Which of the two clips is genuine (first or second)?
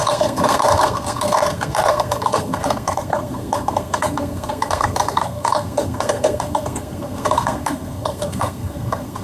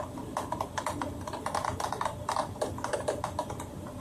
second